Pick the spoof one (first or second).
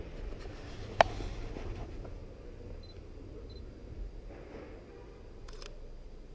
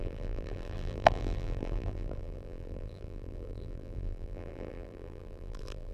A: second